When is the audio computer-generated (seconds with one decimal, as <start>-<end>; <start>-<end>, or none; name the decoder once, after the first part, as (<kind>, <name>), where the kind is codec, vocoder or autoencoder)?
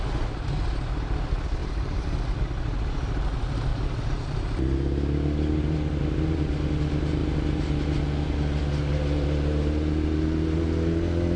1.6-2.2 (vocoder, BigVGAN v2); 3.7-4.5